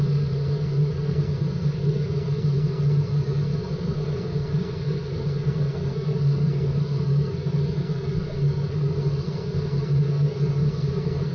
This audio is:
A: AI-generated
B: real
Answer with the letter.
A